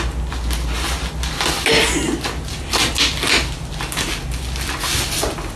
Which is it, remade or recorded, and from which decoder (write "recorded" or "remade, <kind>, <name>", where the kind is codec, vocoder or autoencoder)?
recorded